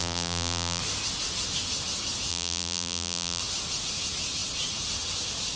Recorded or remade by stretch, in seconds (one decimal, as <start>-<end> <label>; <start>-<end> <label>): 0.0-0.8 remade; 0.8-2.3 recorded; 2.3-3.4 remade; 3.4-5.6 recorded